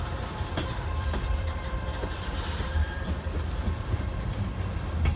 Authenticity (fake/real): fake